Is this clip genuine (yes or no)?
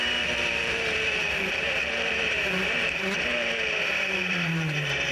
no